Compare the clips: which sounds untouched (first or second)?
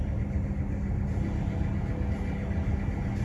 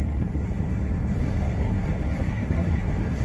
first